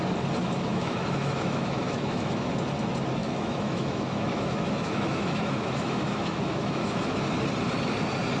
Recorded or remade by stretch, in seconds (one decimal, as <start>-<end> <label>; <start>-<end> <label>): 0.0-0.4 recorded; 0.4-2.5 remade; 2.5-3.2 recorded; 3.2-7.2 remade; 7.2-8.4 recorded